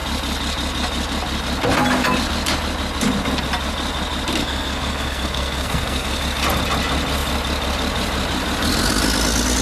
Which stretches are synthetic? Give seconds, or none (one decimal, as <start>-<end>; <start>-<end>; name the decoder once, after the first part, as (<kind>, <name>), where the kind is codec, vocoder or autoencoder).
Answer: 4.4-6.2 (codec, SNAC)